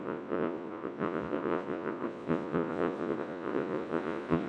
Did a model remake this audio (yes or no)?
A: yes